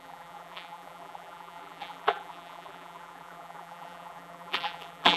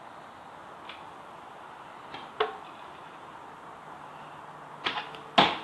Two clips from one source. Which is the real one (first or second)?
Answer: second